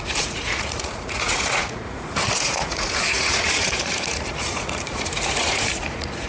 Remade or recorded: remade